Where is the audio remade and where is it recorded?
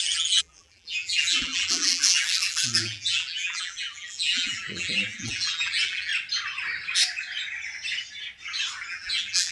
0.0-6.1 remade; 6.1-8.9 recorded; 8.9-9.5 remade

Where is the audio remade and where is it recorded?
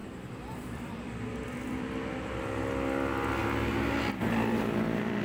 0.0-2.3 remade; 2.3-5.2 recorded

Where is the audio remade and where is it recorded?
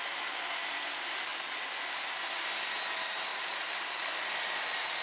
0.0-3.3 recorded; 3.3-4.1 remade; 4.1-5.0 recorded